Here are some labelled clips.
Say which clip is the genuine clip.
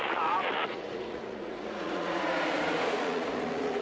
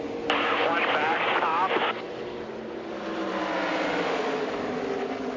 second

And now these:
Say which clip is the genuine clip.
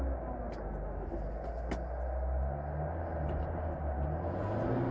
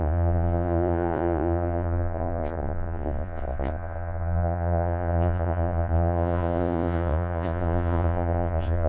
first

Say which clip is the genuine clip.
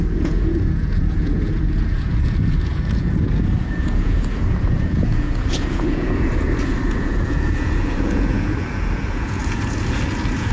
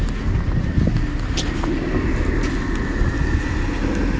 second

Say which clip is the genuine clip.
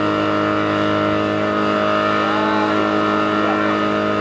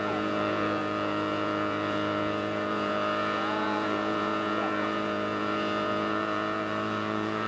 first